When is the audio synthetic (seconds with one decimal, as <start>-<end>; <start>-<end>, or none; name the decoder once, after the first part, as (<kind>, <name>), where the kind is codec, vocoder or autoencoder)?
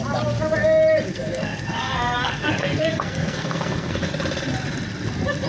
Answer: 1.1-4.0 (codec, SNAC)